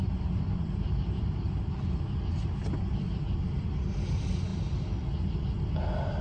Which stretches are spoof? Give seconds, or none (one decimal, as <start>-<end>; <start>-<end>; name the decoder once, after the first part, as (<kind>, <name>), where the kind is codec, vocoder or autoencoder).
0.0-1.2 (vocoder, BigVGAN v2)

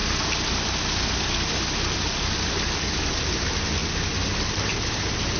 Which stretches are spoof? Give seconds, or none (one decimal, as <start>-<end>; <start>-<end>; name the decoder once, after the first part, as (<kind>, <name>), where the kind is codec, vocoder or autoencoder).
3.2-3.8 (vocoder, BigVGAN v2); 4.7-5.4

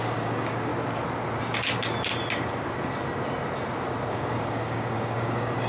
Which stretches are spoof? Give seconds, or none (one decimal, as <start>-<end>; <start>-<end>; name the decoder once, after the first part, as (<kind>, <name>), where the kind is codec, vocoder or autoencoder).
0.0-0.7 (codec, DAC); 4.1-5.7

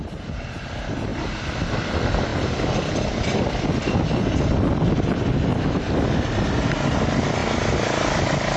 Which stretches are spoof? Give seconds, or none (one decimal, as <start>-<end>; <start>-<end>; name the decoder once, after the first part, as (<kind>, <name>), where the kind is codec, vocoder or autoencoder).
none

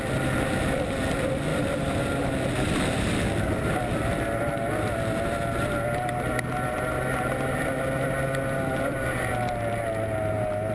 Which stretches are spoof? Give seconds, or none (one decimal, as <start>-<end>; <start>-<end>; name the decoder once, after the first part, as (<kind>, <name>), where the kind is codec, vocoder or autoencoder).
none